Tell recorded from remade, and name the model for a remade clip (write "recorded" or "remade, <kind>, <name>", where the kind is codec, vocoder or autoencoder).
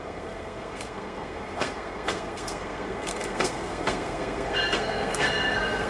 remade, codec, SNAC